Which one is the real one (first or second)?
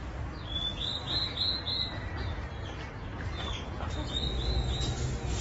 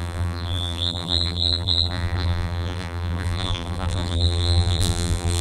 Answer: first